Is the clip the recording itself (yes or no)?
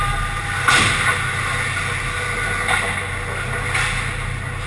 yes